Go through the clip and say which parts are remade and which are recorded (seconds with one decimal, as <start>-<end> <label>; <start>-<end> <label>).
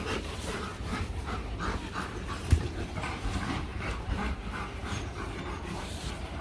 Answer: 0.0-0.7 remade; 0.7-2.3 recorded; 2.3-6.4 remade